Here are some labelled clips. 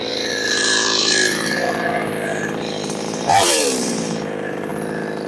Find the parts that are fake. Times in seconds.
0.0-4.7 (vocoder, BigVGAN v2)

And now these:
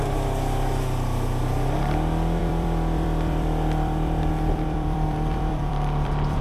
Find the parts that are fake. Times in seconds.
2.4-6.4 (vocoder, BigVGAN v2)